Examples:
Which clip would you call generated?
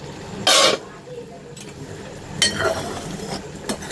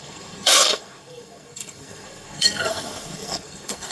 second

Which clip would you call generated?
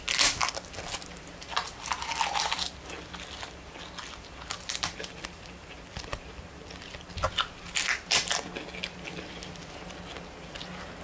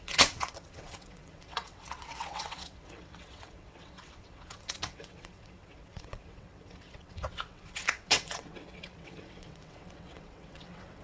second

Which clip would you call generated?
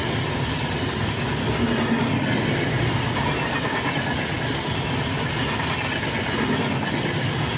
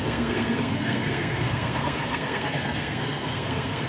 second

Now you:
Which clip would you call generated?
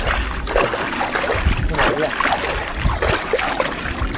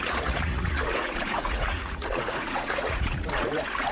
second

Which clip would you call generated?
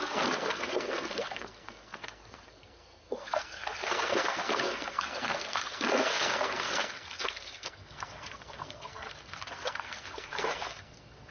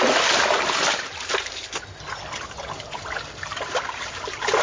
first